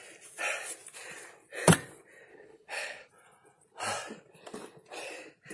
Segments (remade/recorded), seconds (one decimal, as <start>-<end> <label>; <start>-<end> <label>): 0.0-2.3 recorded; 2.3-3.1 remade; 3.1-5.5 recorded